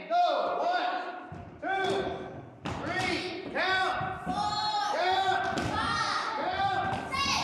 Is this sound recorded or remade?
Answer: remade